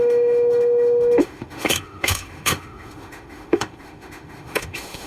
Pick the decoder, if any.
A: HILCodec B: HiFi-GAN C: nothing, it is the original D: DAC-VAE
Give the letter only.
D